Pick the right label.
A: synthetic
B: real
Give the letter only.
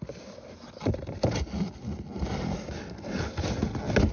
B